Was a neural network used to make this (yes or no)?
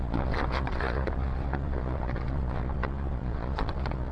yes